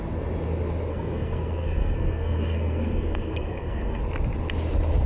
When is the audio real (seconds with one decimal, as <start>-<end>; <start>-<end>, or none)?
0.0-0.9; 4.0-5.1